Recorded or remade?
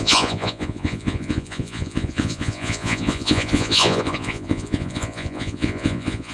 remade